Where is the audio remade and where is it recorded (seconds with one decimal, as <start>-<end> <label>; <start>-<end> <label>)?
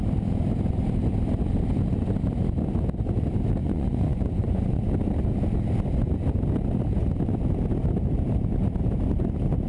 0.0-3.6 recorded; 3.6-4.8 remade; 4.8-9.7 recorded